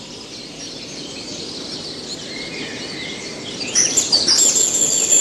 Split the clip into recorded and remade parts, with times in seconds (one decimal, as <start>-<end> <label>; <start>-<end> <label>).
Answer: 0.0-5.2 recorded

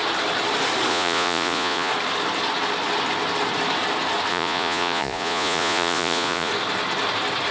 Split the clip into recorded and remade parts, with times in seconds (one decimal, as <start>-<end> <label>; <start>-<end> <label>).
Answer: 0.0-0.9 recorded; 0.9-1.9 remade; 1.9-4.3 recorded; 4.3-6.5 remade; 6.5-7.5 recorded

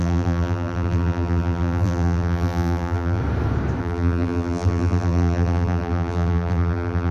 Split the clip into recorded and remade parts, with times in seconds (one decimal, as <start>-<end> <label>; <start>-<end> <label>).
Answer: 0.0-3.2 remade; 3.2-3.8 recorded; 3.8-7.1 remade

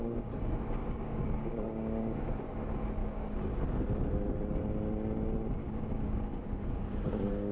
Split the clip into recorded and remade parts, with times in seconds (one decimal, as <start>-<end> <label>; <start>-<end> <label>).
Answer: 0.0-0.8 recorded; 0.8-2.4 remade; 2.4-3.0 recorded; 3.0-3.6 remade; 3.6-5.6 recorded; 5.6-7.5 remade

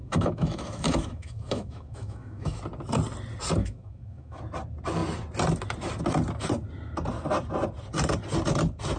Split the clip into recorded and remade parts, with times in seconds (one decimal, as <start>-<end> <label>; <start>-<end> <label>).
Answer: 0.0-2.6 remade; 2.6-3.6 recorded; 3.6-4.4 remade; 4.4-9.0 recorded

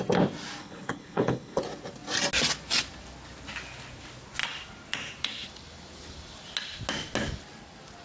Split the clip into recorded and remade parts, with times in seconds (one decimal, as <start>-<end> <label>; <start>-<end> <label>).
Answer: 0.0-0.6 recorded; 0.6-1.6 remade; 1.6-8.0 recorded

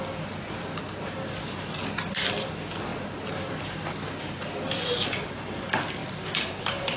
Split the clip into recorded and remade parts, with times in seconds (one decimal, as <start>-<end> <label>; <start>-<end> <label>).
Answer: 0.0-7.0 recorded

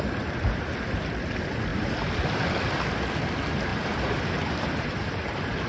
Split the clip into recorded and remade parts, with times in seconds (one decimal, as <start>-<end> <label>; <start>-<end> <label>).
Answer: 0.0-3.7 recorded; 3.7-5.3 remade; 5.3-5.7 recorded